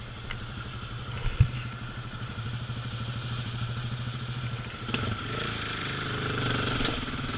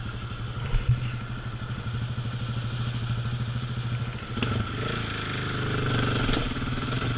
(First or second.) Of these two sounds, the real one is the second